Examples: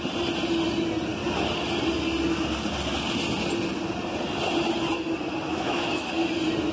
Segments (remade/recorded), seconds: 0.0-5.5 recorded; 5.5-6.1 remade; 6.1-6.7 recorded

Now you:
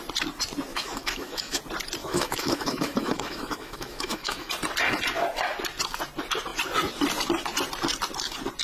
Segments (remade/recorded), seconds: 0.0-0.7 recorded; 0.7-1.6 remade; 1.6-2.0 recorded; 2.0-4.5 remade; 4.5-8.6 recorded

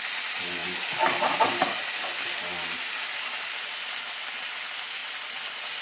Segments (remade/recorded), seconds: 0.0-5.8 recorded

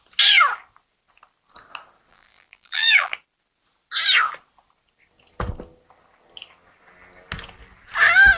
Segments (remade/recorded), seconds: 0.0-2.1 recorded; 2.1-3.1 remade; 3.1-8.4 recorded